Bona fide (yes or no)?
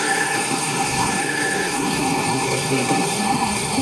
no